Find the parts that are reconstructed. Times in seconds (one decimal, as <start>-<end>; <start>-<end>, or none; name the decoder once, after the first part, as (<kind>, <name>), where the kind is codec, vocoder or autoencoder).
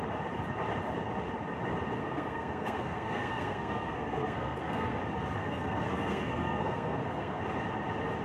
2.0-5.0 (codec, SNAC); 5.4-7.4